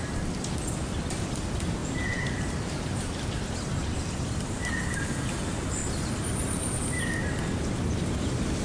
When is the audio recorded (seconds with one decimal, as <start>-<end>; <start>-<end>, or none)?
0.0-1.8; 3.0-8.6